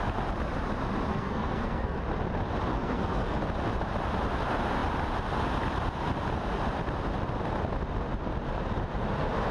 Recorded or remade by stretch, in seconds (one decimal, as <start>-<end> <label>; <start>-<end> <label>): 0.0-1.1 recorded; 1.1-2.0 remade; 2.0-2.7 recorded; 2.7-3.4 remade; 3.4-9.5 recorded